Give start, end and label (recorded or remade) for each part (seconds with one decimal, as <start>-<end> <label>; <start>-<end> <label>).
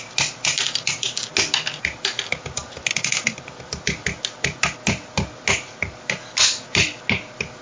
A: 0.0-7.6 recorded